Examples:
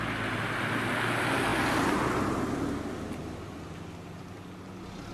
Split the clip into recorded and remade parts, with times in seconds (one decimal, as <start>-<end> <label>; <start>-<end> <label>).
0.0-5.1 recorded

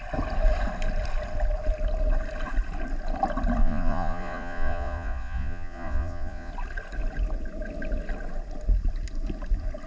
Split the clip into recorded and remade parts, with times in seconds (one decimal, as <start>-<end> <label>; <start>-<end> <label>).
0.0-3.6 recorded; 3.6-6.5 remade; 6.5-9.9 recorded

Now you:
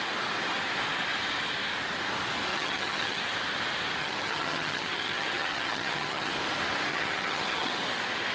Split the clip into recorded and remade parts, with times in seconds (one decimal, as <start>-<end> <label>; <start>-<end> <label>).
0.0-2.5 recorded; 2.5-3.2 remade; 3.2-4.0 recorded; 4.0-6.3 remade; 6.3-6.9 recorded; 6.9-7.7 remade; 7.7-8.3 recorded

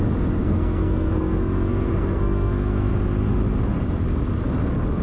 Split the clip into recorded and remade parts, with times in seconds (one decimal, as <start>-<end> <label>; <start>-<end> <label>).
0.0-0.4 recorded; 0.4-2.9 remade; 2.9-5.0 recorded

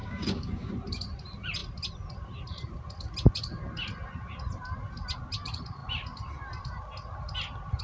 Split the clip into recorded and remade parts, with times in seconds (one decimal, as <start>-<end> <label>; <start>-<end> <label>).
0.0-0.7 remade; 0.7-7.8 recorded